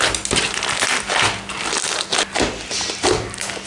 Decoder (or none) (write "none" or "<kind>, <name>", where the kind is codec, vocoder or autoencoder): none